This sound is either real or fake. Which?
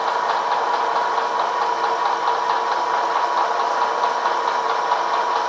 real